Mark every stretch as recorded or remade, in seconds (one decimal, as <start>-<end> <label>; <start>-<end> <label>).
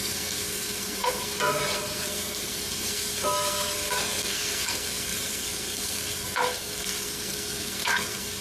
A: 0.0-8.4 remade